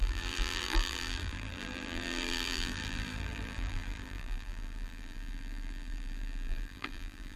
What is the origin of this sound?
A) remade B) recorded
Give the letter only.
A